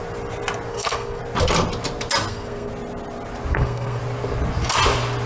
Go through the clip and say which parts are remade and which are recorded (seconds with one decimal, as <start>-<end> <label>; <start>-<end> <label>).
0.0-0.7 recorded; 0.7-1.2 remade; 1.2-2.3 recorded; 2.3-2.7 remade; 2.7-3.5 recorded; 3.5-4.0 remade; 4.0-5.3 recorded

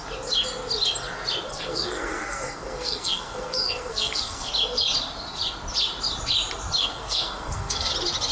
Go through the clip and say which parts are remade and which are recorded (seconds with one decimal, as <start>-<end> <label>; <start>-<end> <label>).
0.0-1.5 recorded; 1.5-4.5 remade; 4.5-6.8 recorded; 6.8-7.9 remade; 7.9-8.3 recorded